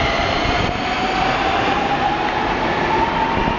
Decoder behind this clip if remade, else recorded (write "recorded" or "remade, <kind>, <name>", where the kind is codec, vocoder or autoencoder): recorded